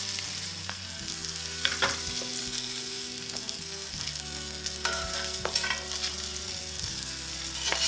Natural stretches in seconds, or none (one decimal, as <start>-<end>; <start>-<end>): 0.0-0.6; 1.7-2.4; 5.5-6.6; 7.3-7.9